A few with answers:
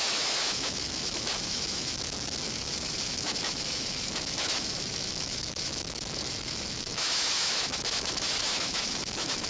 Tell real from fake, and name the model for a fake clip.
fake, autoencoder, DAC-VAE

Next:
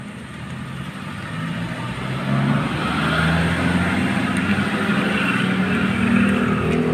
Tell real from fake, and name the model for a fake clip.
real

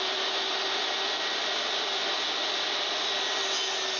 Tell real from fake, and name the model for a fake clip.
real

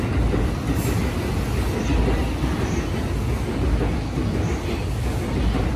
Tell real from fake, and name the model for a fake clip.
real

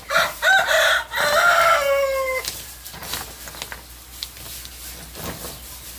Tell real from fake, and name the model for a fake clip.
real